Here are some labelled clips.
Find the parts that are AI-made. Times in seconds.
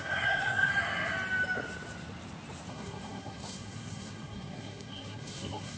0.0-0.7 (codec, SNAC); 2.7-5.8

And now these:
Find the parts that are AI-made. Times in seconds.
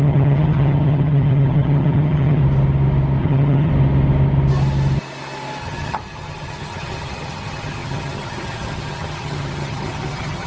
0.0-2.4 (vocoder, HiFi-GAN); 3.2-3.7; 5.6-10.5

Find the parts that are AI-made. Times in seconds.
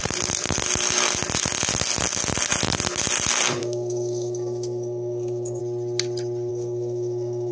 3.6-5.6 (codec, SNAC); 6.5-7.5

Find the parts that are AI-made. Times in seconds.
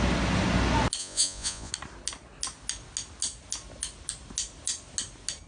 1.0-1.7 (vocoder, Vocos)